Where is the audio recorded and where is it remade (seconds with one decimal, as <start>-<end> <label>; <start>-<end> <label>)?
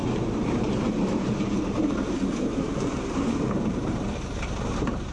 0.0-5.1 remade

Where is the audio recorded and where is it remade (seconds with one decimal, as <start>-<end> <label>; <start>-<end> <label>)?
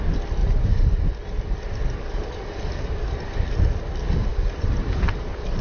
0.0-0.4 recorded; 0.4-3.3 remade; 3.3-4.3 recorded; 4.3-5.6 remade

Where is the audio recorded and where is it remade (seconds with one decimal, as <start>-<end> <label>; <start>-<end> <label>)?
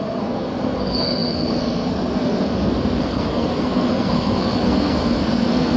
0.0-5.8 remade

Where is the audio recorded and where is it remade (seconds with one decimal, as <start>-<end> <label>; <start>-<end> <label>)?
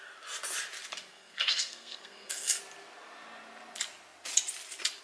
0.0-1.1 recorded; 1.1-2.6 remade; 2.6-5.0 recorded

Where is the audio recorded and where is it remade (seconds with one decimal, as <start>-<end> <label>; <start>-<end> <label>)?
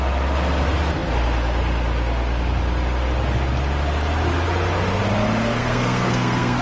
0.0-5.6 recorded; 5.6-6.6 remade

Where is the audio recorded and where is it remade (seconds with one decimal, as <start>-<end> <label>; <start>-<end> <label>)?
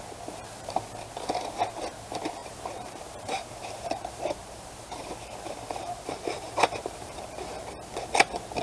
0.0-0.4 recorded; 0.4-0.9 remade; 0.9-2.4 recorded; 2.4-7.2 remade; 7.2-8.6 recorded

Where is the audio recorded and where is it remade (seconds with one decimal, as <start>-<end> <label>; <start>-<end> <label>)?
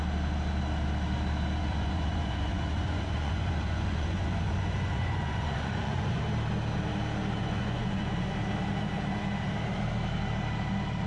0.0-1.6 recorded; 1.6-6.2 remade; 6.2-7.4 recorded; 7.4-8.3 remade; 8.3-11.1 recorded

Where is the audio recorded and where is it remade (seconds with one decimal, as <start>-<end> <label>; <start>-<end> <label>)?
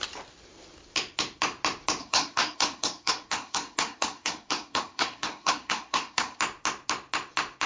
0.0-2.0 recorded; 2.0-6.4 remade; 6.4-7.7 recorded